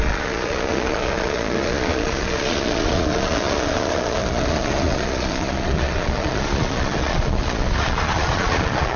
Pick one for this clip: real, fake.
fake